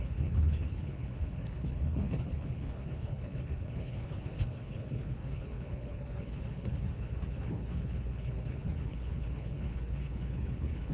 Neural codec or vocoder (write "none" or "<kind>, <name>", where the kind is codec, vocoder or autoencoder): codec, HILCodec